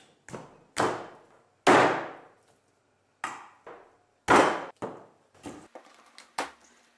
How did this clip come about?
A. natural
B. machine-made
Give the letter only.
A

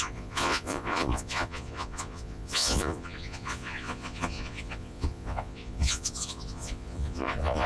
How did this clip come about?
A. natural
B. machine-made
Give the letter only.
B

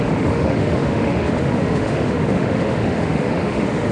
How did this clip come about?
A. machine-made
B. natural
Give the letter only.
A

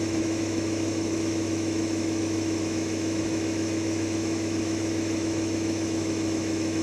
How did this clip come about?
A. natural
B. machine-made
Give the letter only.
B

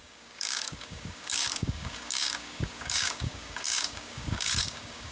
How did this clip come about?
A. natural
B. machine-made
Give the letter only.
B